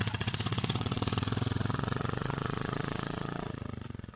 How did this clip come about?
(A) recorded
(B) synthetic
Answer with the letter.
B